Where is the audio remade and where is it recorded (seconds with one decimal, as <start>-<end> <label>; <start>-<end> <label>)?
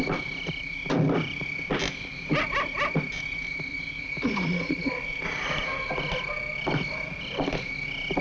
0.0-3.7 recorded; 3.7-5.1 remade; 5.1-8.2 recorded